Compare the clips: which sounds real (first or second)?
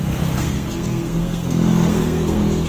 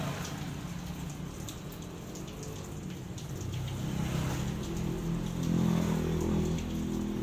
second